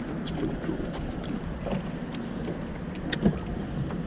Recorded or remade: recorded